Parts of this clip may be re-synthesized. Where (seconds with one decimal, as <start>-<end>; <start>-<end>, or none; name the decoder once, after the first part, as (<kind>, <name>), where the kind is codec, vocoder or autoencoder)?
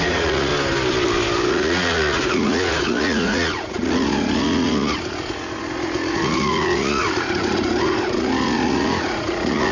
0.0-0.5 (vocoder, Vocos); 1.5-9.7